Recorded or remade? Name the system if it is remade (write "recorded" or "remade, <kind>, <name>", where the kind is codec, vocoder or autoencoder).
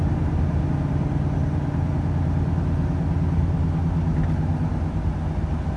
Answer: recorded